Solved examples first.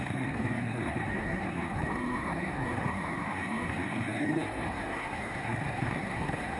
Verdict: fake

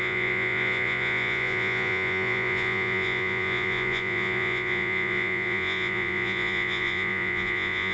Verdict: fake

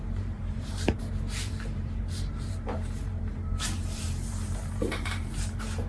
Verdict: fake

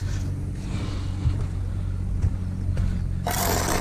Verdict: real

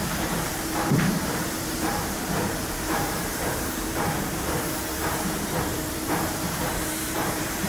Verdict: fake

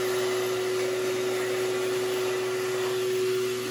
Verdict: real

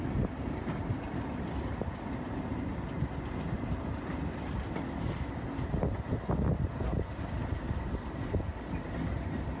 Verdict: real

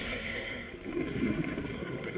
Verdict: fake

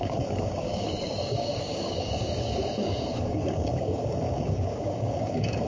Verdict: fake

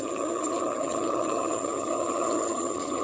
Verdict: fake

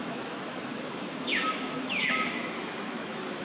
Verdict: fake